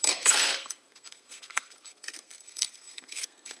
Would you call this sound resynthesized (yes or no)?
yes